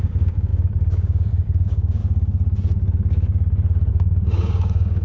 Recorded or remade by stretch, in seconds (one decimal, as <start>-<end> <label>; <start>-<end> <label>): 0.0-2.0 remade; 2.0-3.9 recorded; 3.9-5.0 remade